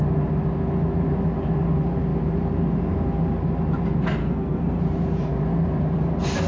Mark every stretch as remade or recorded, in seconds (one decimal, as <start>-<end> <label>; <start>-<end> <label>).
0.0-4.2 recorded; 4.2-4.8 remade; 4.8-6.5 recorded